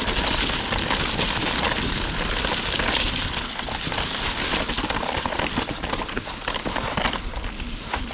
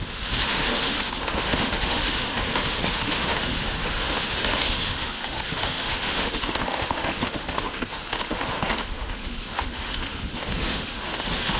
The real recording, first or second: first